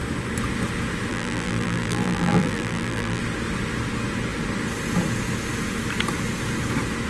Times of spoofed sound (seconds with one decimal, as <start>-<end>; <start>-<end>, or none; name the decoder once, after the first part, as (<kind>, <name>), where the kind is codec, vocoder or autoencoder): 1.1-3.2 (vocoder, BigVGAN v2)